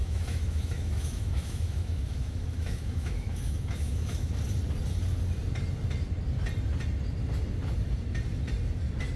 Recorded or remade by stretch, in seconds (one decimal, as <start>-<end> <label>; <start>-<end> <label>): 0.0-4.3 remade; 4.3-9.2 recorded